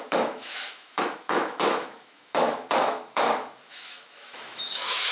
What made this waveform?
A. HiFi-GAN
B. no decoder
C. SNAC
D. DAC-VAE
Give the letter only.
D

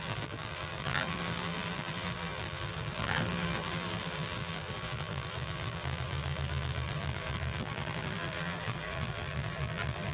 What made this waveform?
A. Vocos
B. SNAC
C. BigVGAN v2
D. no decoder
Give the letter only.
C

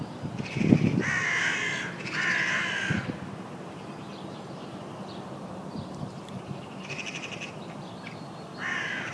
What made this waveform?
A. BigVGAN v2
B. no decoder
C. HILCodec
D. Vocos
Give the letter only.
A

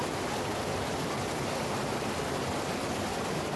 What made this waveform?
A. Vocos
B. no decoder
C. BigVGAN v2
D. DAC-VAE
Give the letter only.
B